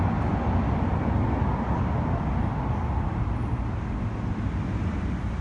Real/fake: real